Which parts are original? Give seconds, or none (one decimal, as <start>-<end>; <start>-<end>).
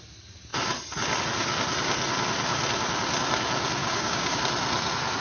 0.0-3.8; 4.4-5.2